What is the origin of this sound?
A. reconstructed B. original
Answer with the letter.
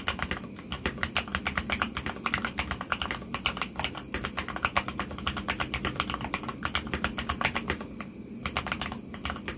B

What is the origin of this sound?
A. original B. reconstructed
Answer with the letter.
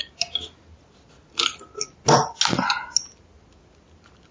A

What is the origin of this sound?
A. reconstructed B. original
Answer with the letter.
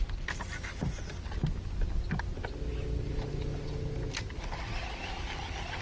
B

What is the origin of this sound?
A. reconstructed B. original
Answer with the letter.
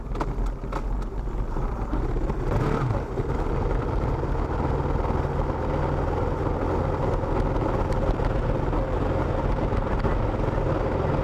B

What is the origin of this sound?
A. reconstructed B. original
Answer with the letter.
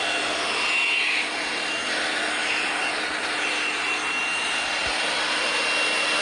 B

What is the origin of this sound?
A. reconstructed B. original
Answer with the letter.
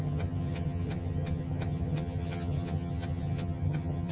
A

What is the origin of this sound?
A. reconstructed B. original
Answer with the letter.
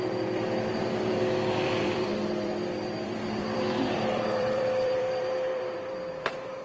A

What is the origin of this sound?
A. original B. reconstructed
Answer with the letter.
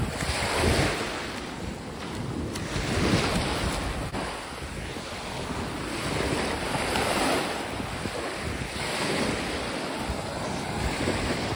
A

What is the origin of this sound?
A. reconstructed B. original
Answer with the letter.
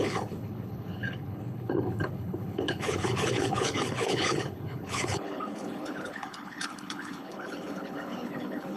A